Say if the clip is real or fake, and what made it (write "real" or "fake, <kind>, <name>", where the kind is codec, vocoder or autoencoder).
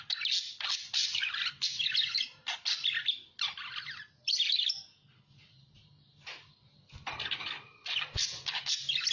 real